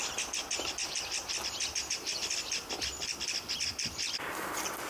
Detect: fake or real fake